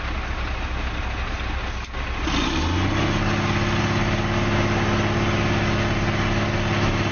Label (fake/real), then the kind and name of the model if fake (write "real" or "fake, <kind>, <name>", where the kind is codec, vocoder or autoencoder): real